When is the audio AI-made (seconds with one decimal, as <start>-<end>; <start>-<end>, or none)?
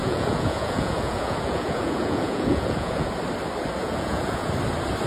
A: 0.0-3.1; 3.8-4.5